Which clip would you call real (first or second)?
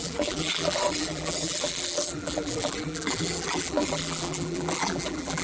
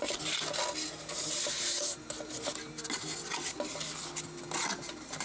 second